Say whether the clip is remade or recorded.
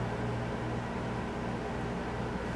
recorded